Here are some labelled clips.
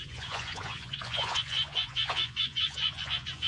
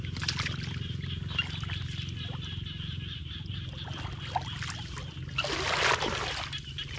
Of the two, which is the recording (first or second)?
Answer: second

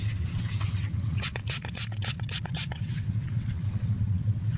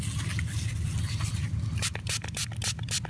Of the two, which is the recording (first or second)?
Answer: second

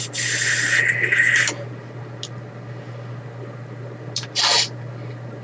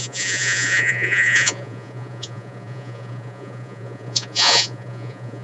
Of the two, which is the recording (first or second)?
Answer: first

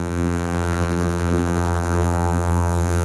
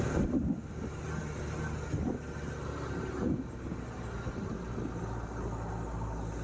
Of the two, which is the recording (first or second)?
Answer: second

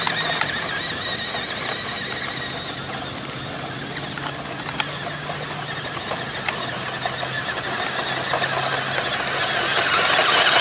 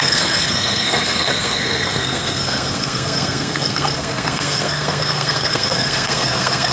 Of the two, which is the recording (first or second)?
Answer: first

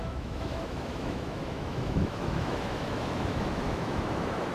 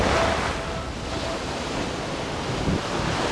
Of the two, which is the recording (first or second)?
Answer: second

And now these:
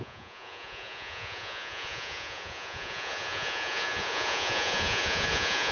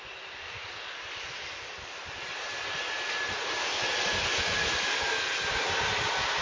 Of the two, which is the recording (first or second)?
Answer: second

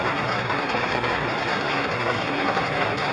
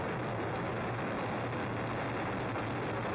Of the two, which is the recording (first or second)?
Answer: second